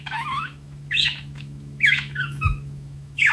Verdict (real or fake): fake